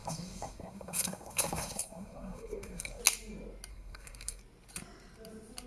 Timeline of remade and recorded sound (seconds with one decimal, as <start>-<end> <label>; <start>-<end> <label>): 0.0-3.0 remade; 3.0-3.7 recorded; 3.7-4.4 remade; 4.4-5.7 recorded